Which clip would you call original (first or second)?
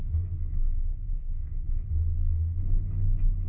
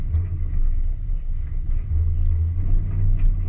second